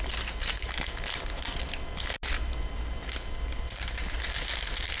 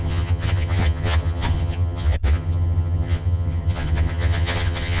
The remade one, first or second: second